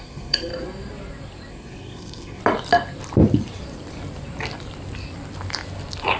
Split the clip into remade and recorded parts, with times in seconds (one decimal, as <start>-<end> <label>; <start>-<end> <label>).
0.0-0.5 remade; 0.5-1.5 recorded; 1.5-2.4 remade; 2.4-6.2 recorded